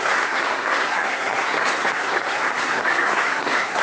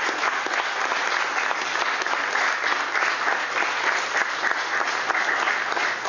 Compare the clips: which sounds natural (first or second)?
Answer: second